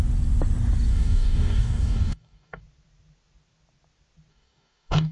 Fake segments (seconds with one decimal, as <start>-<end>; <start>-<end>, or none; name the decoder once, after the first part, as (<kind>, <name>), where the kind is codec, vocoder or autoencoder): 0.9-2.6 (codec, DAC); 4.3-5.1